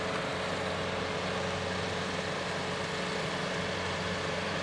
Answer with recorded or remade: recorded